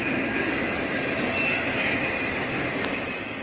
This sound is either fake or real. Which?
real